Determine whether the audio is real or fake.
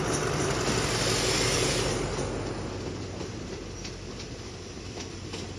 real